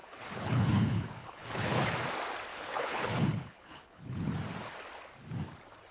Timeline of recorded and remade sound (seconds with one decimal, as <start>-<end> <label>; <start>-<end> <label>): 0.0-1.9 remade; 1.9-2.5 recorded; 2.5-4.3 remade; 4.3-5.9 recorded

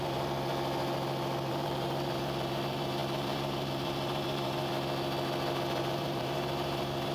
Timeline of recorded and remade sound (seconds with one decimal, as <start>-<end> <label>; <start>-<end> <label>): 0.0-0.5 remade; 0.5-1.5 recorded; 1.5-4.7 remade; 4.7-5.8 recorded; 5.8-7.1 remade

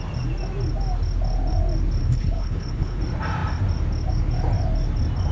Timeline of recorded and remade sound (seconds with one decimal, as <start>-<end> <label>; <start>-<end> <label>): 0.0-2.0 recorded; 2.0-3.0 remade; 3.0-5.3 recorded

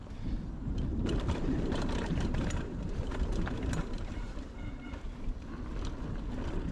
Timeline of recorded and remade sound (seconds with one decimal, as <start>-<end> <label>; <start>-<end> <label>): 0.0-0.9 recorded; 0.9-4.9 remade; 4.9-6.7 recorded

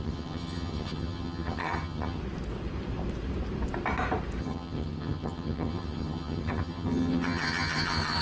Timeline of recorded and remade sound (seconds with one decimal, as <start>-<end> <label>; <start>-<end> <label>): 0.0-2.2 remade; 2.2-4.4 recorded; 4.4-8.2 remade

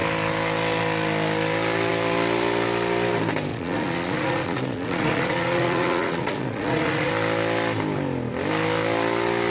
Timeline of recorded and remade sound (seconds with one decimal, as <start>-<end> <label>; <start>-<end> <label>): 0.0-3.5 recorded; 3.5-7.1 remade; 7.1-9.5 recorded

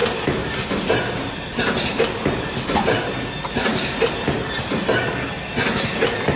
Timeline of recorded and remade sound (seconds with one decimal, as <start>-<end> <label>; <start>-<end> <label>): 0.0-6.4 recorded